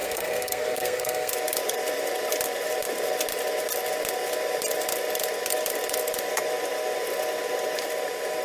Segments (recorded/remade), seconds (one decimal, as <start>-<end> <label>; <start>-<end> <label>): 0.0-1.3 remade; 1.3-8.4 recorded